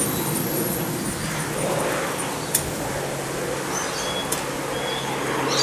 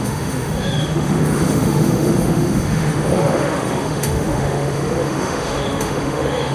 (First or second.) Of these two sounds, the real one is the first